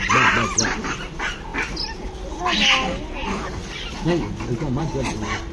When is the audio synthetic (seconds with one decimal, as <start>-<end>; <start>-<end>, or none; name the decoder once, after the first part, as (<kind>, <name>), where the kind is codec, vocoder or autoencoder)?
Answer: none